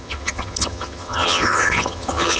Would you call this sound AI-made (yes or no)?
yes